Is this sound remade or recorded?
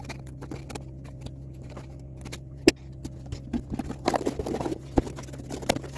recorded